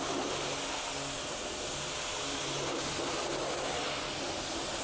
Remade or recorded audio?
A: recorded